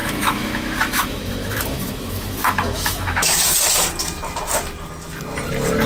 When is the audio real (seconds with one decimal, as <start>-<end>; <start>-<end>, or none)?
3.5-5.9